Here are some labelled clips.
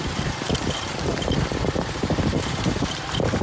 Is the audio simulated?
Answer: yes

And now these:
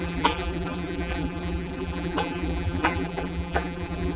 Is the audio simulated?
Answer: yes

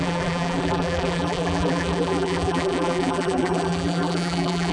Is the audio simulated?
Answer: yes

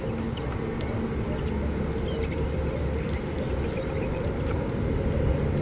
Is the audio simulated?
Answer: no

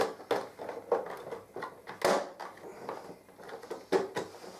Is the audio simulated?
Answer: no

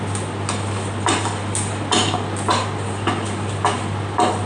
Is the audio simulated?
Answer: no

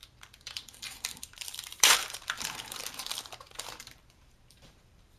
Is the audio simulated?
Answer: yes